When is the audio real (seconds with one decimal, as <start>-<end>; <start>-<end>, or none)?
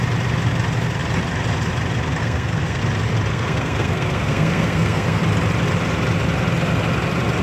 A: 0.0-2.2; 2.8-3.3; 5.2-7.4